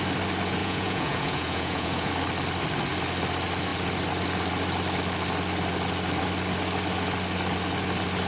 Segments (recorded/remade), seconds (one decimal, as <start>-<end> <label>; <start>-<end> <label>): 0.0-0.6 recorded; 0.6-2.1 remade; 2.1-8.3 recorded

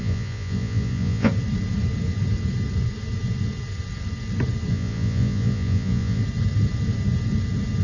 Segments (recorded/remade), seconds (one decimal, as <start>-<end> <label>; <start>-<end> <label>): 0.0-1.3 remade; 1.3-4.7 recorded; 4.7-6.2 remade; 6.2-7.8 recorded